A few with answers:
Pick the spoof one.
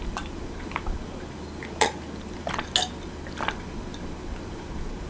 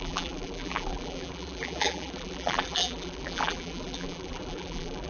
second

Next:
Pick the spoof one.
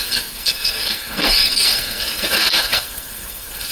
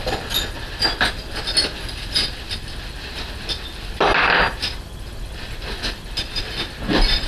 first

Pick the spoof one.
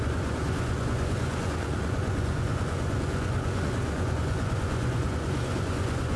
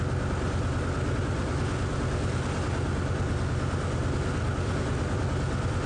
first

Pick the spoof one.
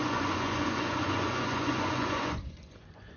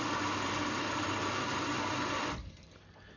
first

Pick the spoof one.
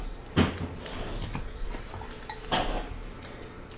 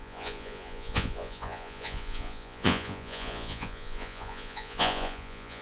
second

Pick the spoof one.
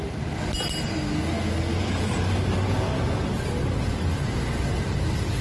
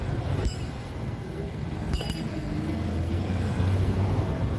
second